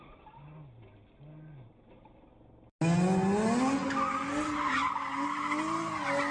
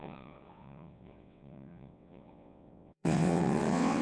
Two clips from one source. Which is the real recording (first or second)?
first